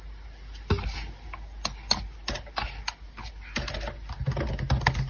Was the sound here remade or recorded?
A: recorded